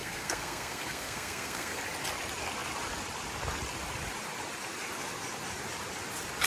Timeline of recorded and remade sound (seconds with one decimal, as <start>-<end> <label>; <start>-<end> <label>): 0.0-1.8 remade; 1.8-6.5 recorded